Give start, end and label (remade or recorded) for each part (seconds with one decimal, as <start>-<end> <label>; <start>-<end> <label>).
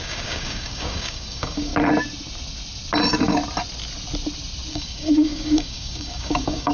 0.0-1.7 remade; 1.7-4.7 recorded; 4.7-6.7 remade